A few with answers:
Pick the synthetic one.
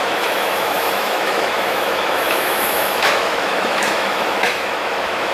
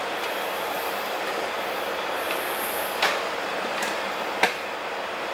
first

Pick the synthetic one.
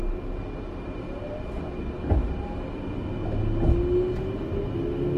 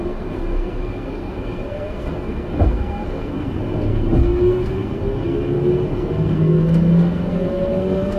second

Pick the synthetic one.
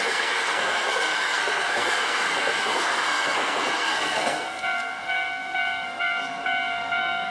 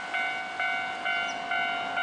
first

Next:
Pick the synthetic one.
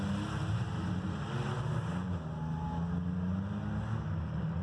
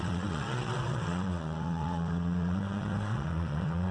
second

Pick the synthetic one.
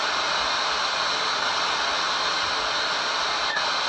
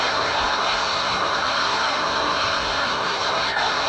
second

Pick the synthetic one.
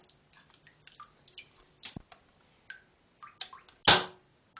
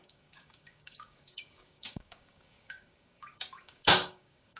second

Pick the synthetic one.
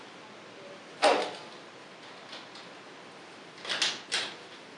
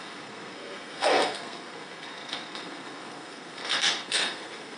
second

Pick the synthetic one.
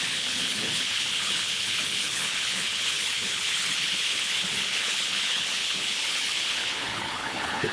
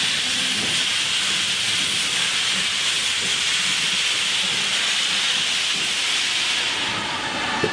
first